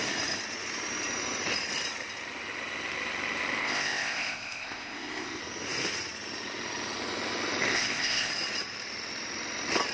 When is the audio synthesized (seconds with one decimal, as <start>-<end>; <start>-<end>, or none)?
3.6-5.4; 7.7-8.3